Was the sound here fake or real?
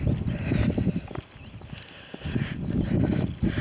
real